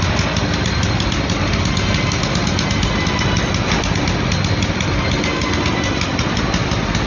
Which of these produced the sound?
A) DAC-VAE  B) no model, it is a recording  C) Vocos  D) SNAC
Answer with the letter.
B